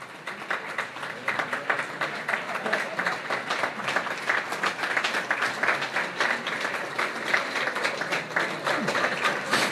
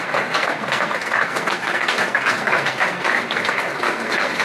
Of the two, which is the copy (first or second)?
second